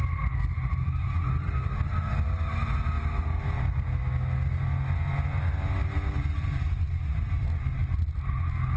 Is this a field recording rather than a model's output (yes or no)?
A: yes